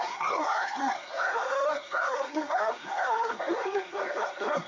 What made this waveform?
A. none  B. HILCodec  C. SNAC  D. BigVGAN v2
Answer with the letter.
C